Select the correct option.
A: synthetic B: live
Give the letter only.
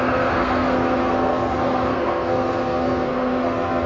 A